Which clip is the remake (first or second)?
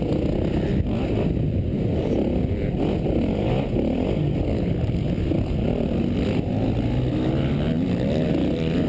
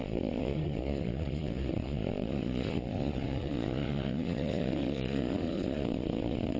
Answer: second